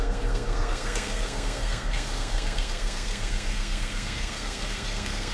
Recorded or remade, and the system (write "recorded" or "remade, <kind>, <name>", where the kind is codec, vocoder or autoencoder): remade, codec, SNAC